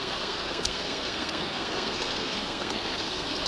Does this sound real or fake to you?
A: fake